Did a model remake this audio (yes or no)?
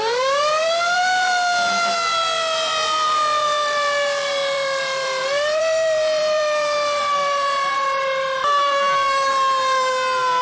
yes